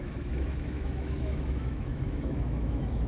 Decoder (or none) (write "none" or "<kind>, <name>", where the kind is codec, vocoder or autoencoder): autoencoder, DAC-VAE